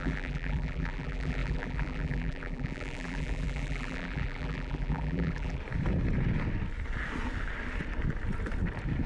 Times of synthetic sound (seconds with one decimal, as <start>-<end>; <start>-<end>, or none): 0.0-5.6

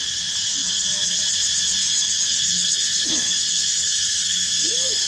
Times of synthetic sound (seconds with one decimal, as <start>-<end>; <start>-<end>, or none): 0.5-1.2; 1.8-5.1

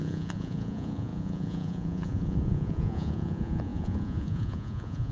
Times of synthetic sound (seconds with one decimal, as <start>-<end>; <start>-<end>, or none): 0.0-5.1

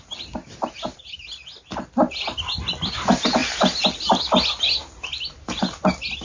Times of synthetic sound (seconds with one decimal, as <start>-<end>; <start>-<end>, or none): none

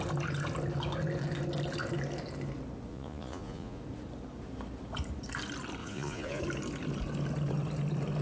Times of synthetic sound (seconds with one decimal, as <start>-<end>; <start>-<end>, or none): 2.9-3.8; 5.8-6.4

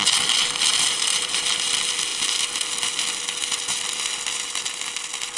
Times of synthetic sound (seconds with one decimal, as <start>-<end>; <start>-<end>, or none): 0.7-1.4

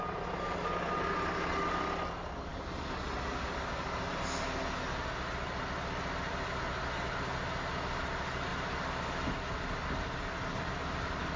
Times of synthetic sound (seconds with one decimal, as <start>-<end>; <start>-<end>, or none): none